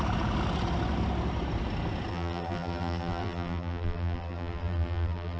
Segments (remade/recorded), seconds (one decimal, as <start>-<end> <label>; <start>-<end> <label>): 0.0-2.1 recorded; 2.1-5.4 remade